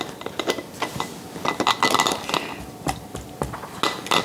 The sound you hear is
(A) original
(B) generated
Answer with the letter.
A